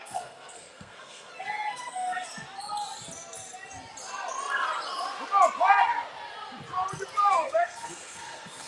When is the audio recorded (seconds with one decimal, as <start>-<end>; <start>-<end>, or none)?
2.3-7.3